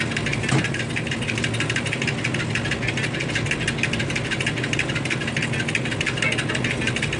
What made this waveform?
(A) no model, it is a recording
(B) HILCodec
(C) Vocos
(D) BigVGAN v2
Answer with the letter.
A